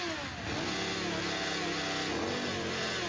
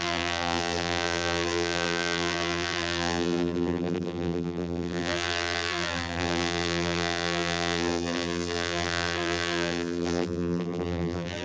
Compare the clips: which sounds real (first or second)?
first